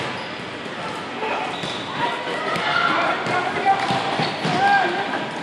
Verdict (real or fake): real